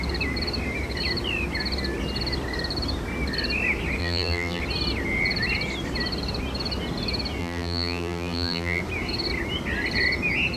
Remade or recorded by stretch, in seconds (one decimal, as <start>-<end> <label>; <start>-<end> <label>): 0.0-4.0 recorded; 4.0-4.6 remade; 4.6-7.4 recorded; 7.4-8.8 remade; 8.8-10.6 recorded